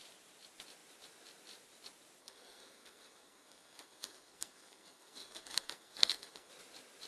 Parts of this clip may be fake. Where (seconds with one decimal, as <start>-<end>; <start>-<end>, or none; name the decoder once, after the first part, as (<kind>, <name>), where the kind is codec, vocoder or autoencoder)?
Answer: 2.2-6.5 (codec, SNAC)